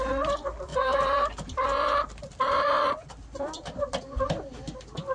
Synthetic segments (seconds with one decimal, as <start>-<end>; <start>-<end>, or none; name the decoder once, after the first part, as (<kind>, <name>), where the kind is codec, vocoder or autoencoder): 0.7-3.8 (vocoder, BigVGAN v2)